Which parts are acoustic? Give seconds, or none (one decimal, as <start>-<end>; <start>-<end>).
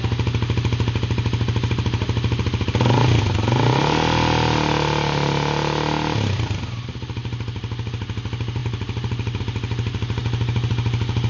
0.0-11.3